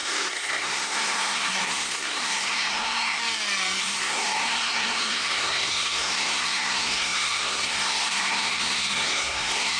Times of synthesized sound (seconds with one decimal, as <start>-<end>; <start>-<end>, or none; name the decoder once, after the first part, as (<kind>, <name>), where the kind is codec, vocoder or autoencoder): 0.0-3.2 (codec, SNAC); 3.8-9.8